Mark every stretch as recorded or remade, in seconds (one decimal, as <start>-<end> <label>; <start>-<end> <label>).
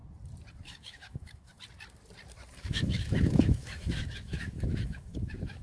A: 0.0-0.6 recorded; 0.6-1.5 remade; 1.5-2.6 recorded; 2.6-5.6 remade